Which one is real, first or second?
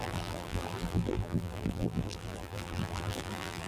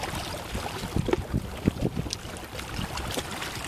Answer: second